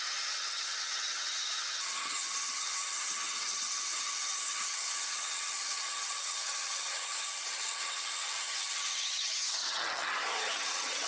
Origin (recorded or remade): remade